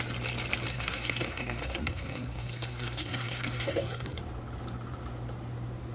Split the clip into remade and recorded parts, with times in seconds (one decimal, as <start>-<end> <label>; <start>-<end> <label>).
0.0-0.7 recorded; 0.7-4.2 remade; 4.2-5.9 recorded